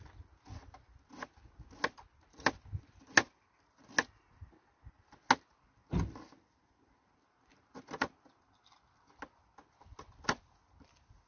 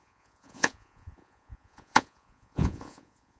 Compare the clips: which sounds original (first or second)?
first